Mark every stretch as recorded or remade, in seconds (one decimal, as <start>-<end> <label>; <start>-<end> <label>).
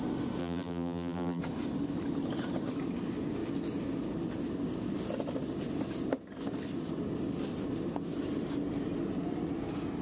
0.0-0.4 recorded; 0.4-1.4 remade; 1.4-10.0 recorded